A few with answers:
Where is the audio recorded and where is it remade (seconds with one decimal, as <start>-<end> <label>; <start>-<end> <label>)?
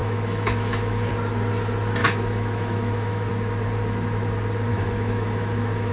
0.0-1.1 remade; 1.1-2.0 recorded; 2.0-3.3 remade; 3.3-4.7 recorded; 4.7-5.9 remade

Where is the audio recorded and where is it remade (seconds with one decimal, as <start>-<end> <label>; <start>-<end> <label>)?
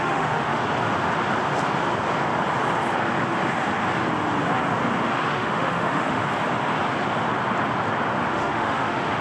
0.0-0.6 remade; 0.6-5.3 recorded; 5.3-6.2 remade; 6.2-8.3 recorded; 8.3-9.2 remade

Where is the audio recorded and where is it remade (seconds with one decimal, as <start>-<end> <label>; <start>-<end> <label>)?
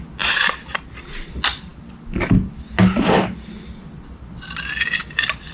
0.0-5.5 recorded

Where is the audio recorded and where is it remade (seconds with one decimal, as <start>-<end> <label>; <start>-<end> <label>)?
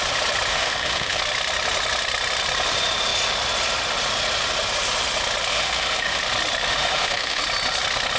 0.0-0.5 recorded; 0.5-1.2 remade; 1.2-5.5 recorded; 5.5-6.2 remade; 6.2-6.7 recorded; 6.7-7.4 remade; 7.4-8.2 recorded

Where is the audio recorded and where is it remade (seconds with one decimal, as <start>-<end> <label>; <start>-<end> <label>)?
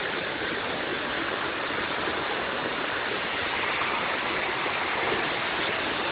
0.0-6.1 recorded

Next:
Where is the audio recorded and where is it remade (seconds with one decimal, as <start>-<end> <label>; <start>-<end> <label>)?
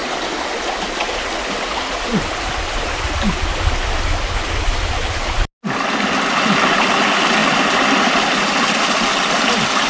0.0-9.9 recorded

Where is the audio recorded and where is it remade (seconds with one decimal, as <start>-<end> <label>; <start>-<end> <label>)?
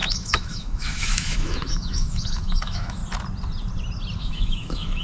0.0-3.0 remade; 3.0-4.2 recorded; 4.2-5.0 remade